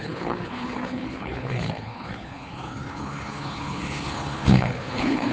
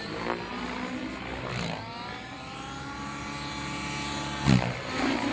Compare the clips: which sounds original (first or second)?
second